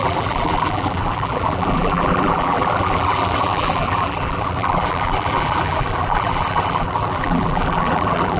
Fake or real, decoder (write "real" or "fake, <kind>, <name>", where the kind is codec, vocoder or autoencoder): fake, vocoder, BigVGAN v2